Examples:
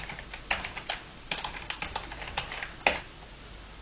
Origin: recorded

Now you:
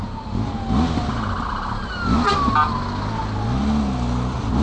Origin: recorded